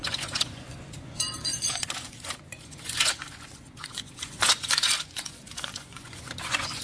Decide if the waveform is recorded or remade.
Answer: remade